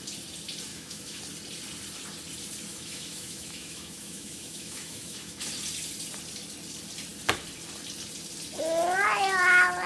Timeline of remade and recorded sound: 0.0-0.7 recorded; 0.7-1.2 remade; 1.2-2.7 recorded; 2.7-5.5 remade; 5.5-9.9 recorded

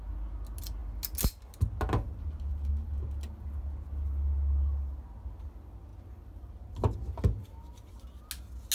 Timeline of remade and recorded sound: 0.0-8.7 recorded

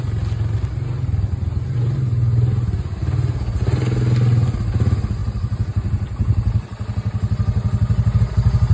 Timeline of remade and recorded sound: 0.0-8.7 recorded

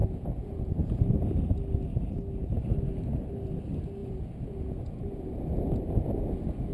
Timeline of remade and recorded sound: 0.0-1.0 remade; 1.0-4.0 recorded; 4.0-6.0 remade; 6.0-6.7 recorded

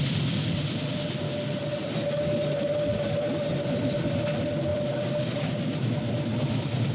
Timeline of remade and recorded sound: 0.0-4.7 recorded; 4.7-5.5 remade; 5.5-6.3 recorded; 6.3-6.9 remade

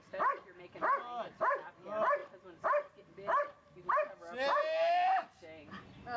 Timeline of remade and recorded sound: 0.0-6.2 recorded